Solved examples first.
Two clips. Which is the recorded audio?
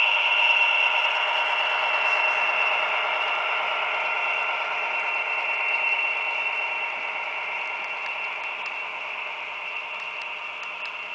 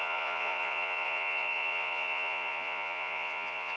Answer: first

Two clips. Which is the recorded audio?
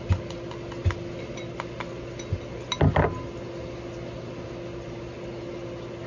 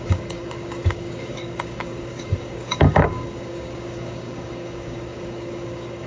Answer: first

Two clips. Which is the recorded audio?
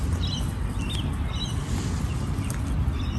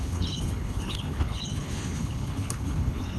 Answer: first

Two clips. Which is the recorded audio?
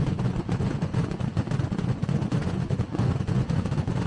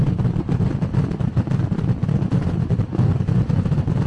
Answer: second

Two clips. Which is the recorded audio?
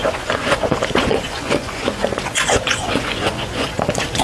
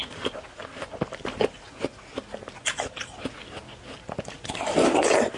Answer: second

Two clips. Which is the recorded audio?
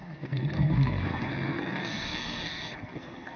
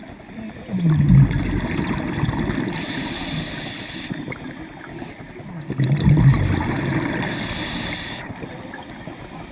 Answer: second